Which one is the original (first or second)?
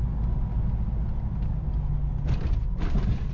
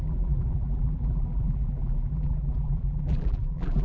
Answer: first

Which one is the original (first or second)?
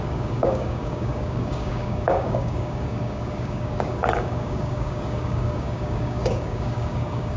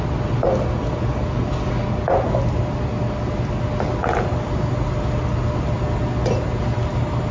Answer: second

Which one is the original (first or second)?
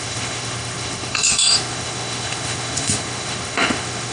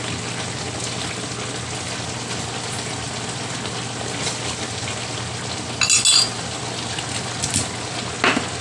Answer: second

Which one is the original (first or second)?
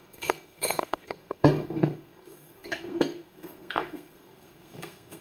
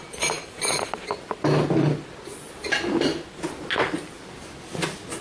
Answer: second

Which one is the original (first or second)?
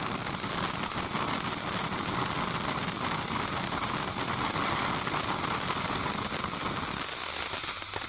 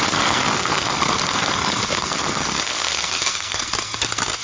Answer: first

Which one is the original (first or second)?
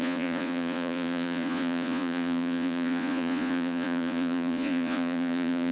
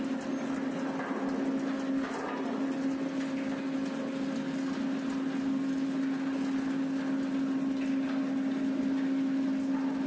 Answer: second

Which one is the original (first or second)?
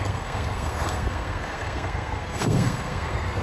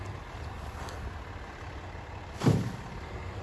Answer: second